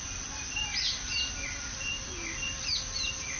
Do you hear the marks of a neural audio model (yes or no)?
no